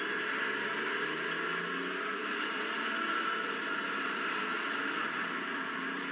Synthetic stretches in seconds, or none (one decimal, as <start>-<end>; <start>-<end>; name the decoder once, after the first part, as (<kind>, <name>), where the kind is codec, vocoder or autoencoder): 2.2-6.1 (vocoder, BigVGAN v2)

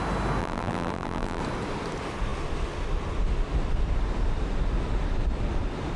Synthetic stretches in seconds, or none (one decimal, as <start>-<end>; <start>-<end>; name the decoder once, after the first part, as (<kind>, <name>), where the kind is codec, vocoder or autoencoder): 0.4-1.4 (vocoder, BigVGAN v2)

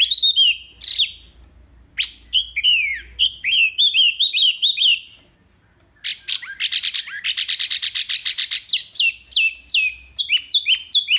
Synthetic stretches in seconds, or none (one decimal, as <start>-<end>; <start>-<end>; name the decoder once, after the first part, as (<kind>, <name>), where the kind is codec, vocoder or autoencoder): none

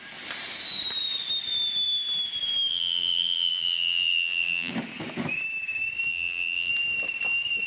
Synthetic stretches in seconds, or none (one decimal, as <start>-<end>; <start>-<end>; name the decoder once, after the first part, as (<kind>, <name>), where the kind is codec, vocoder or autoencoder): 2.7-4.7 (vocoder, BigVGAN v2); 6.1-6.7

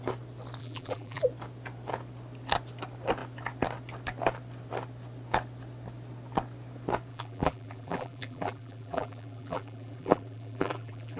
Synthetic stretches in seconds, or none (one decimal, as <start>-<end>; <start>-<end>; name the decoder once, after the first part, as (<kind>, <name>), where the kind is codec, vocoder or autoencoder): 0.6-1.2 (vocoder, BigVGAN v2); 7.1-11.2

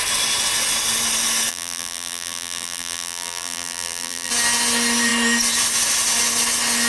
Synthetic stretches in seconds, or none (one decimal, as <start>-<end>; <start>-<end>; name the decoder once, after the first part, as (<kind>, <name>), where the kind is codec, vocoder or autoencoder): 1.5-4.3 (vocoder, BigVGAN v2)

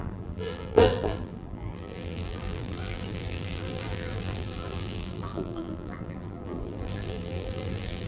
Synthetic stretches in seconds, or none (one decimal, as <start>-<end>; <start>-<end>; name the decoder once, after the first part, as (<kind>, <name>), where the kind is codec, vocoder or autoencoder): 0.0-8.1 (vocoder, BigVGAN v2)